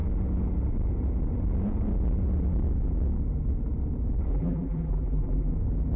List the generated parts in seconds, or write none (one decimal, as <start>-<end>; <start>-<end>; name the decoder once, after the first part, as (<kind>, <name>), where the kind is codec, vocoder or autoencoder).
4.3-5.5 (vocoder, BigVGAN v2)